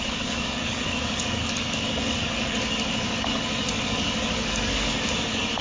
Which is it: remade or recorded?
remade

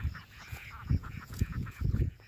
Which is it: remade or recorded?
remade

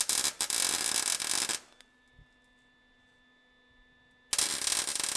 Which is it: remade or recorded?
recorded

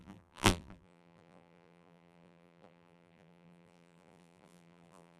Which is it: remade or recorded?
remade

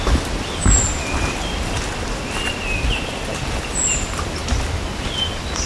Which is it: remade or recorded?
recorded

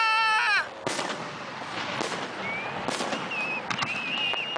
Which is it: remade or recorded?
recorded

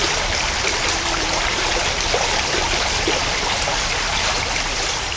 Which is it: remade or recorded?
remade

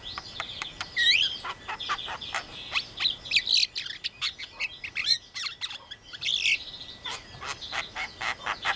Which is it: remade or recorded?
recorded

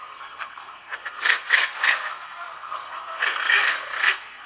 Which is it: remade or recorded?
remade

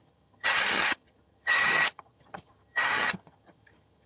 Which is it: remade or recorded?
remade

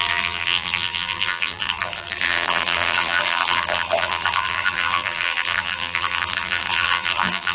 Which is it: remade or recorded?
remade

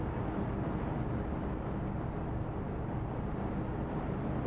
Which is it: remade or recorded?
recorded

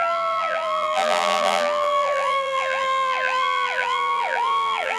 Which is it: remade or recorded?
remade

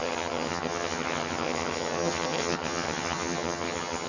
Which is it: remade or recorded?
remade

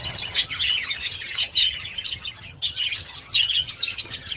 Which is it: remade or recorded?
remade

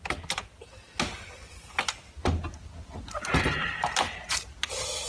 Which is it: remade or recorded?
recorded